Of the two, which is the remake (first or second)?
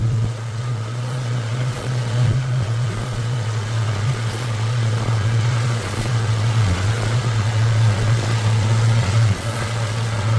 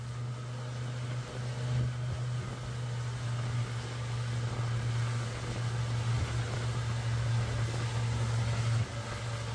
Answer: first